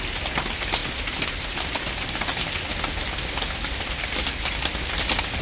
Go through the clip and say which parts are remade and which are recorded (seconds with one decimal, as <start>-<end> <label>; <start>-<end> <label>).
0.0-5.4 recorded